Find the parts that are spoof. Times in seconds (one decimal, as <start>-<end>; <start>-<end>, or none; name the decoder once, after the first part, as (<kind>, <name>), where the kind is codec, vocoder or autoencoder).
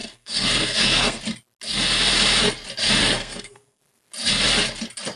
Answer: 0.0-1.2 (codec, SNAC); 3.0-3.8